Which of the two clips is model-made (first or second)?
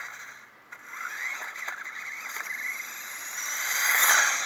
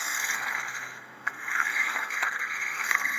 second